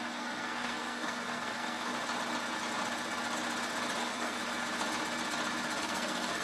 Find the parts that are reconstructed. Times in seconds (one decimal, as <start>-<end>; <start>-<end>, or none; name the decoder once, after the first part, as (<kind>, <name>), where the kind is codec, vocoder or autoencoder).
0.0-1.9 (codec, SNAC); 4.0-4.4; 5.8-6.4